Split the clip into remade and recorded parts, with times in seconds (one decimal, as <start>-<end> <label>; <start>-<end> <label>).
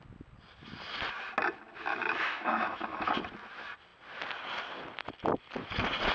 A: 0.0-1.9 recorded; 1.9-3.1 remade; 3.1-6.1 recorded